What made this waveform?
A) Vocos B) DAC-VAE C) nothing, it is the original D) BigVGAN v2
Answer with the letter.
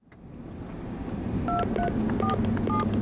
C